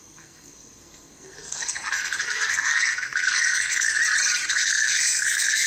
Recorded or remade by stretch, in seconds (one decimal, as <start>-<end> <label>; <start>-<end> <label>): 0.0-4.0 remade; 4.0-4.5 recorded; 4.5-5.7 remade